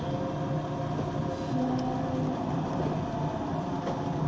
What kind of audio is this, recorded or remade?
recorded